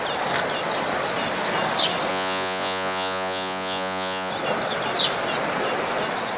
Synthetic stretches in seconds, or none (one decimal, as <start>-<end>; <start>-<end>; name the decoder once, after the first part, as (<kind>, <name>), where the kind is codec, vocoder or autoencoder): 2.1-4.3 (vocoder, Vocos)